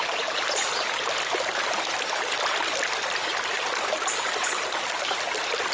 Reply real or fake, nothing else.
real